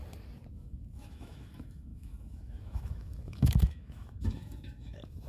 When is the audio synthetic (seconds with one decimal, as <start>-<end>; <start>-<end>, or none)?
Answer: 0.5-5.3